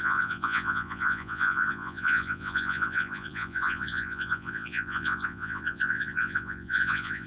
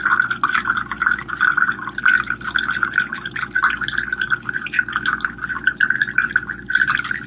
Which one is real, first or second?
second